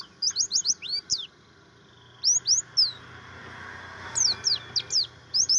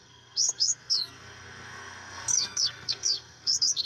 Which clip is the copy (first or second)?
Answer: second